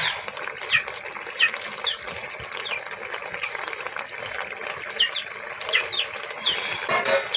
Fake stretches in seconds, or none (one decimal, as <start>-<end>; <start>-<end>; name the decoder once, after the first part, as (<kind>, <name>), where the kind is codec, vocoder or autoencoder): none